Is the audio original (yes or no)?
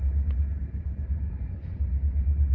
no